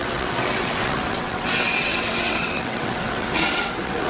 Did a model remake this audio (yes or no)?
yes